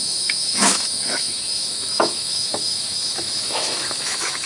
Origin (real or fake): fake